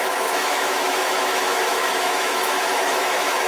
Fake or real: fake